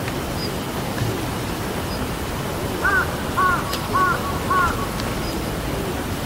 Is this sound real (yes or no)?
yes